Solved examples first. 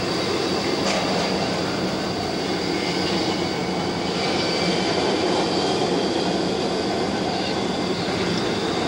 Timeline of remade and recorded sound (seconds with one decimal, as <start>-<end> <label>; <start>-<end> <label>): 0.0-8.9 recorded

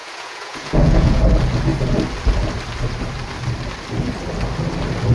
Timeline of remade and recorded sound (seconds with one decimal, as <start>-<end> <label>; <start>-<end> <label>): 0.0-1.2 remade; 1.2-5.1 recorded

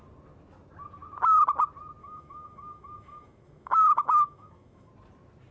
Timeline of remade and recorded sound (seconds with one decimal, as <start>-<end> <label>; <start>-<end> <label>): 0.0-2.0 recorded; 2.0-4.9 remade; 4.9-5.5 recorded

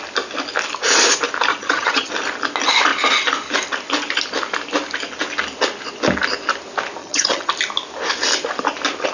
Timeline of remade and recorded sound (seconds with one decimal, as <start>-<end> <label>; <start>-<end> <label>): 0.0-1.5 recorded; 1.5-2.1 remade; 2.1-7.0 recorded; 7.0-7.5 remade; 7.5-9.1 recorded